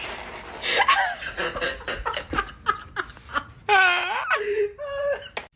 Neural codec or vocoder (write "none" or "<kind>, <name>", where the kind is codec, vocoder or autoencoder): none